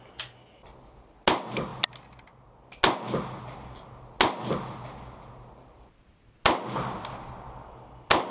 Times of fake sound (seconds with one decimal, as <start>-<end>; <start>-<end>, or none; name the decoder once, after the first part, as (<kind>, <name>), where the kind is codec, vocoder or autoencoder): none